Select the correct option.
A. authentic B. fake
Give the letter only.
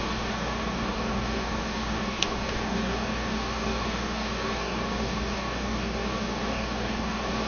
B